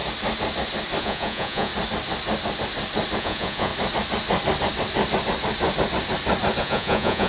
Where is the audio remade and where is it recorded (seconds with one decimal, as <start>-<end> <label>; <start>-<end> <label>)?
0.0-1.0 recorded; 1.0-1.7 remade; 1.7-3.2 recorded; 3.2-3.7 remade; 3.7-6.6 recorded; 6.6-7.3 remade